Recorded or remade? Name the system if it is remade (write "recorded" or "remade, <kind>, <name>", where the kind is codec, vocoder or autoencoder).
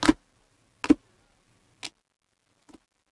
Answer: recorded